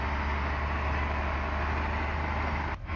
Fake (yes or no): no